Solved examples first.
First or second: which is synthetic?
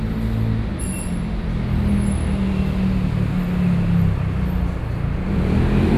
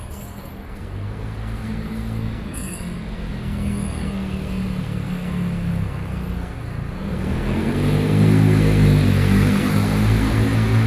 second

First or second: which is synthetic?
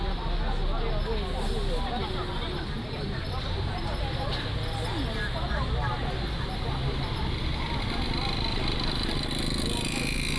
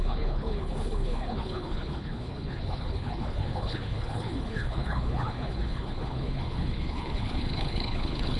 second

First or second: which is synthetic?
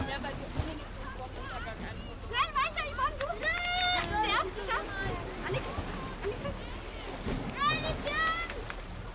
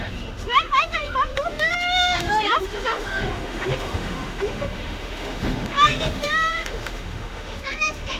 second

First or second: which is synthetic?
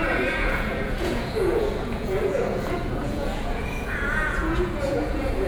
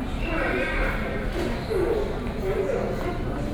first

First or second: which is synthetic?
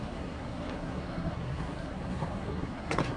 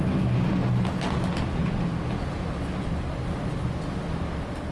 first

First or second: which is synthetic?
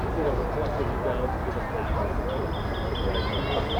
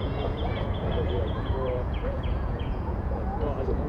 second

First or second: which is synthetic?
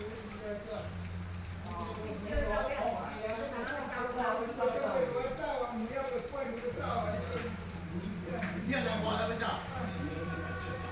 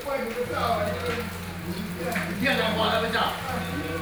first